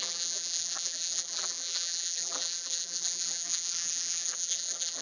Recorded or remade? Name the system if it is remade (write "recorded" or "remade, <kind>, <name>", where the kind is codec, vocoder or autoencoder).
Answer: remade, vocoder, BigVGAN v2